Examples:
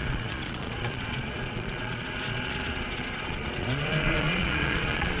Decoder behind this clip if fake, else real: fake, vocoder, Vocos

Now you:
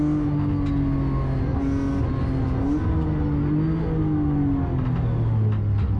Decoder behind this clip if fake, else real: real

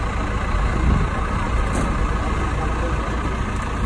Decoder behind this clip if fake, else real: real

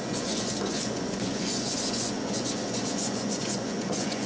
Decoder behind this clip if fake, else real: fake, vocoder, Vocos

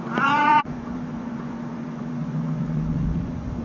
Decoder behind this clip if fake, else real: fake, vocoder, Vocos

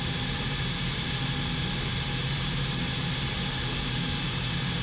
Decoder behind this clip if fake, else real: real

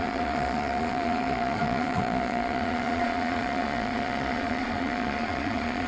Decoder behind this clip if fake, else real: fake, vocoder, Vocos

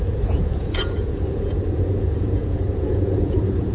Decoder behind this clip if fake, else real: fake, vocoder, Vocos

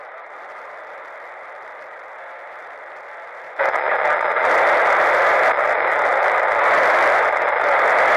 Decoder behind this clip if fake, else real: real